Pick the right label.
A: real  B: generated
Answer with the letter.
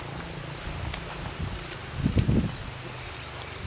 A